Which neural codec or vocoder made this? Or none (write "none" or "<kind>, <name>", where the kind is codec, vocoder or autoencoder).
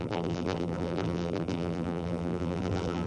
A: vocoder, BigVGAN v2